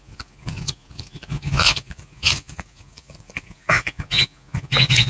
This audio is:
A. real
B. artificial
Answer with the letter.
B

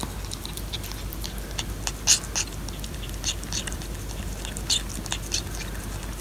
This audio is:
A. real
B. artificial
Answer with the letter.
A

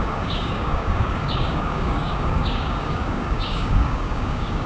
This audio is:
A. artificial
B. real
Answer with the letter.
A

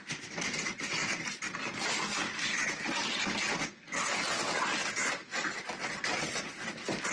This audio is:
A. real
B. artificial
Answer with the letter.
B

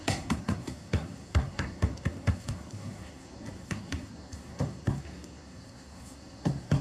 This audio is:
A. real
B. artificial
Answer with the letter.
B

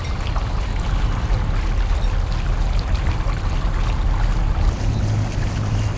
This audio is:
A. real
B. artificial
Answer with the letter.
A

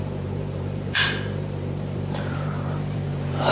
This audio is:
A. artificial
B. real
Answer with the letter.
A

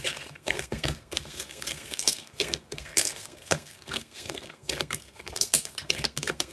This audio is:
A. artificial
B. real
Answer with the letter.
A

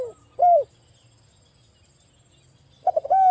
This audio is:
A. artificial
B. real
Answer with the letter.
B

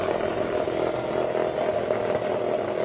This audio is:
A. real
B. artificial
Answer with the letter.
A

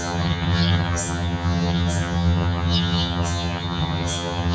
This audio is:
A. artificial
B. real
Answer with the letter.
A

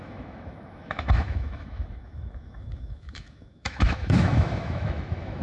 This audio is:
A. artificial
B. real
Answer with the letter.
A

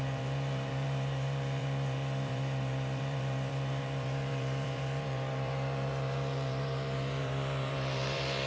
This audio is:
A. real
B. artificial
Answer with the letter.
B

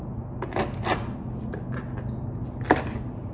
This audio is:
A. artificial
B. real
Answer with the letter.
B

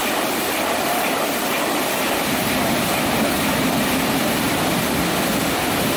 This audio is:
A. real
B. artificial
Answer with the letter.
B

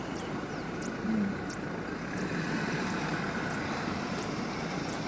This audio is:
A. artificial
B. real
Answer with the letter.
A